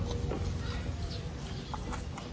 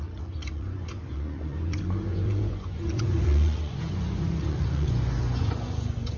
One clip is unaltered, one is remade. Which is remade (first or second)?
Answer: second